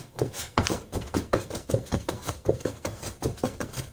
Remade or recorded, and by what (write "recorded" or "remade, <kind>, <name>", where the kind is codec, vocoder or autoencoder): remade, codec, SNAC